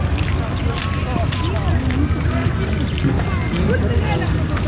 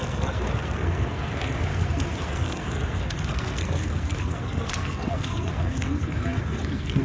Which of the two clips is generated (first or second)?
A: second